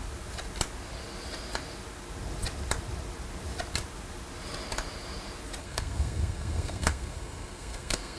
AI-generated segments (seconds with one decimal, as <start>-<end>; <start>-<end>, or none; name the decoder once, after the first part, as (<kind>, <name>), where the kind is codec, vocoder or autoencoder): 5.6-8.2 (codec, SNAC)